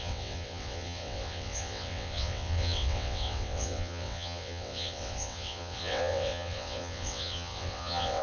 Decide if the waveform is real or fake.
fake